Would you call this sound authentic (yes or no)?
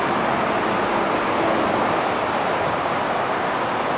yes